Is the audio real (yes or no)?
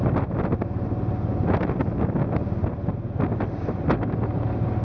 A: yes